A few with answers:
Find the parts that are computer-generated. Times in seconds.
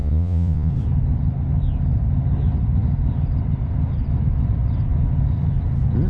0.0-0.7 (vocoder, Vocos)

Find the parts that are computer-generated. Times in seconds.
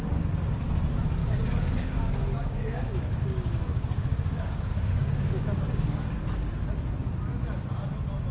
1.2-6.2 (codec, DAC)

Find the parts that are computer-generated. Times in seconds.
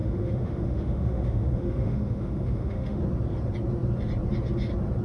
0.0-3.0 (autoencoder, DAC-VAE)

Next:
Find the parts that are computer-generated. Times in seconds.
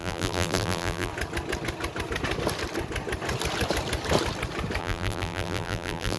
0.0-1.1 (vocoder, BigVGAN v2); 4.8-6.2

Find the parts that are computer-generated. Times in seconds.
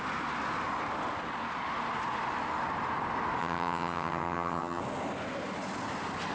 3.4-4.8 (vocoder, HiFi-GAN)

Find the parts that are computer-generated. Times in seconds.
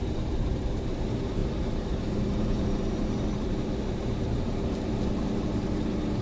0.0-6.2 (vocoder, BigVGAN v2)